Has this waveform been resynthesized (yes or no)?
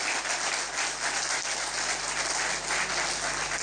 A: no